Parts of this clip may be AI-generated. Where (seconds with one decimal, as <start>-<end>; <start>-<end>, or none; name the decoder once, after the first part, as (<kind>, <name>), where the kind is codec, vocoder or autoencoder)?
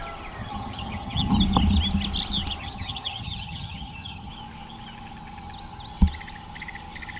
0.4-1.3 (vocoder, HiFi-GAN); 2.6-4.3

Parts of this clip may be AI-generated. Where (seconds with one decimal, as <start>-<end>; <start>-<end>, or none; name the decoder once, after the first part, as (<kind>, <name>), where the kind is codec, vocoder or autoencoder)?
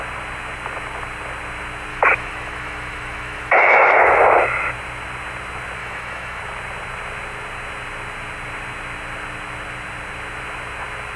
1.9-4.2 (autoencoder, DAC-VAE); 5.8-6.4